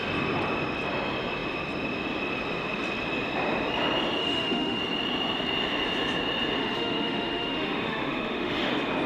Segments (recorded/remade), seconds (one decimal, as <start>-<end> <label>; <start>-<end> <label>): 0.0-4.2 recorded; 4.2-4.8 remade; 4.8-6.6 recorded; 6.6-8.7 remade; 8.7-9.1 recorded